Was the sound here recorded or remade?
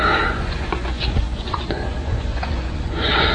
remade